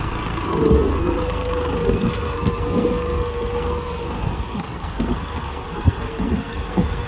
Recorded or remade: remade